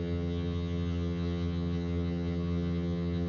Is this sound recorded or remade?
remade